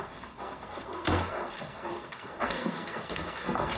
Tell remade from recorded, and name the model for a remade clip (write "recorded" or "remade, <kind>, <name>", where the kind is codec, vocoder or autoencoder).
remade, codec, SNAC